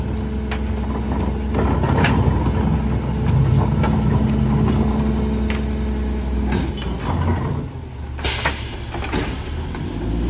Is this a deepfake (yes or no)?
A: no